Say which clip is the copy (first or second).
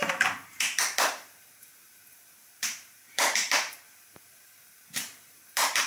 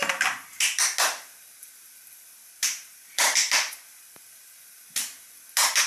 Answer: first